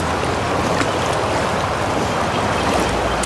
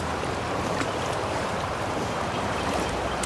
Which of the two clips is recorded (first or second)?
first